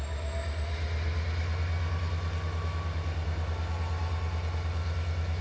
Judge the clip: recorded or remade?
recorded